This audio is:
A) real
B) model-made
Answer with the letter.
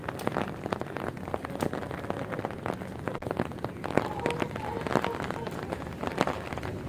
A